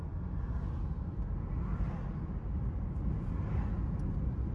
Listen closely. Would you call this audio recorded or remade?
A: recorded